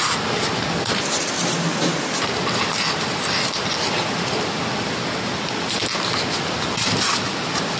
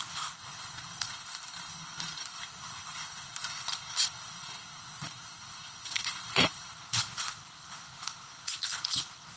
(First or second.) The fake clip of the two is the second